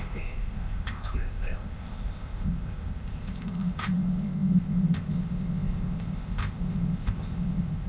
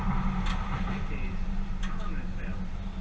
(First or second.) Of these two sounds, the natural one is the second